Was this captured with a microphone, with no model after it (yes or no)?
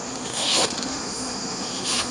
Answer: no